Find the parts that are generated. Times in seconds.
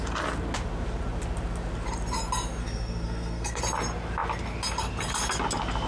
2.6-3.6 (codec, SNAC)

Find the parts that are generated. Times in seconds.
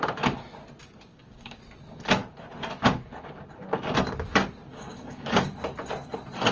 1.1-1.6 (codec, DAC); 4.7-5.5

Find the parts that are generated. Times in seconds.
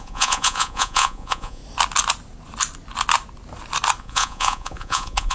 0.0-1.6 (vocoder, Vocos); 4.0-5.3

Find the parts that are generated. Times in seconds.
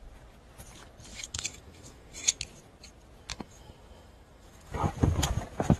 1.1-2.4 (autoencoder, DAC-VAE); 3.3-4.7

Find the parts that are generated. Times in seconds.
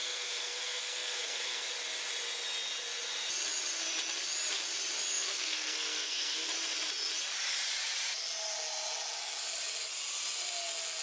0.0-1.7 (codec, SNAC); 5.1-6.5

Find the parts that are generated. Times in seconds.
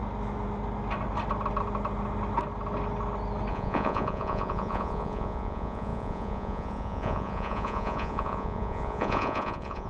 3.5-9.9 (vocoder, Vocos)